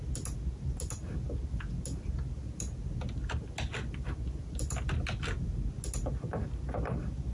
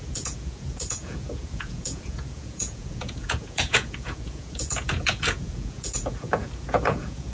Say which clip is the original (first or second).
first